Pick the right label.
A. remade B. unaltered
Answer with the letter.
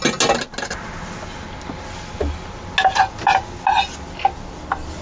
B